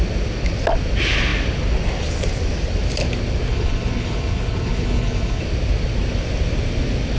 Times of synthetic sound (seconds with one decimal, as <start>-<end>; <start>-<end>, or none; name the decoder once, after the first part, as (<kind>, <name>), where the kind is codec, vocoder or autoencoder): 3.5-5.4 (codec, HILCodec)